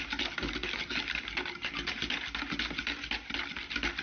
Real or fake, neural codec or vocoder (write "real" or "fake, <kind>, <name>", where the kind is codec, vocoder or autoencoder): real